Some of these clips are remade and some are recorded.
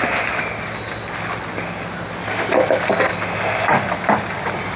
recorded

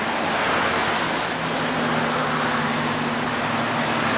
recorded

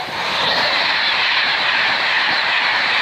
remade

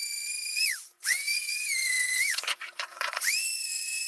remade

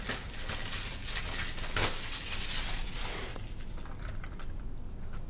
recorded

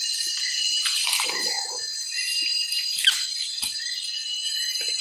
recorded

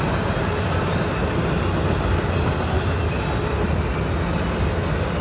recorded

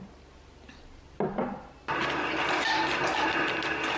recorded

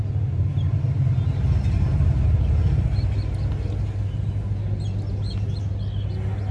recorded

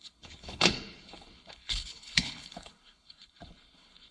remade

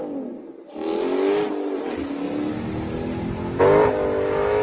recorded